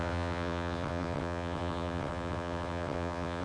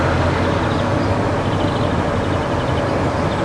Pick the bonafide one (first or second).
second